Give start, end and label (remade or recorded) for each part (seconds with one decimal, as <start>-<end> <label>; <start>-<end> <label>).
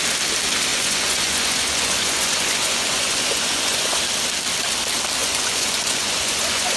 0.0-0.7 recorded; 0.7-4.0 remade; 4.0-5.2 recorded; 5.2-6.8 remade